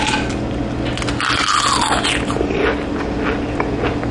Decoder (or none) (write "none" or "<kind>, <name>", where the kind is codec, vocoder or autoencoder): none